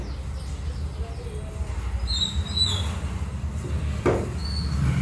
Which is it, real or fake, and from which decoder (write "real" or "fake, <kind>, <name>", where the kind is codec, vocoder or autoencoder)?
real